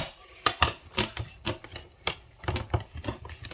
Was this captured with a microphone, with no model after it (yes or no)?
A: yes